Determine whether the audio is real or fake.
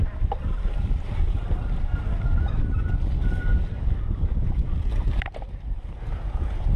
real